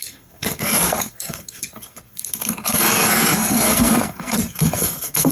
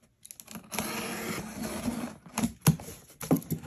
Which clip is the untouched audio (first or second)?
second